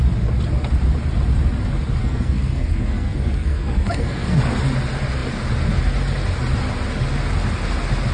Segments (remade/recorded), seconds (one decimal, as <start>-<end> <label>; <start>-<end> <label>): 0.0-2.0 recorded; 2.0-4.4 remade; 4.4-8.1 recorded

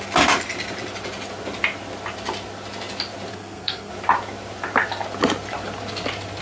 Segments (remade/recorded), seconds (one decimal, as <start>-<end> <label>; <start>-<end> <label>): 0.0-3.3 recorded; 3.3-3.9 remade; 3.9-6.4 recorded

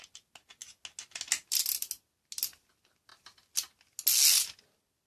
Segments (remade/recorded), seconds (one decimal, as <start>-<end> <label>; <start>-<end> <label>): 0.0-5.1 recorded

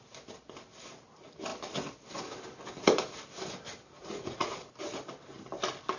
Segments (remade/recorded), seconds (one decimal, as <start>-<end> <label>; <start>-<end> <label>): 0.0-4.0 recorded; 4.0-4.7 remade; 4.7-6.0 recorded

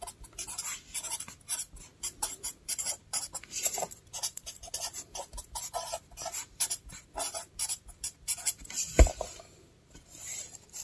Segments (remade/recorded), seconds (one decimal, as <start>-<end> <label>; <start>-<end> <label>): 0.0-10.8 remade

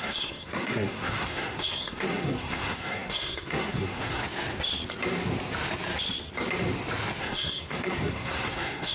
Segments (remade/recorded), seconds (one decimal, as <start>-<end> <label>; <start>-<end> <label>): 0.0-4.2 remade; 4.2-7.2 recorded; 7.2-8.9 remade